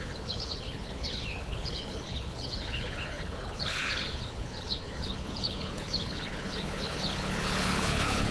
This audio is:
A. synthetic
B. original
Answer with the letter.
A